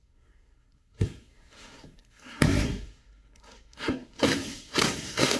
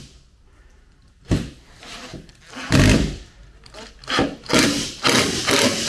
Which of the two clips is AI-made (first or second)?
first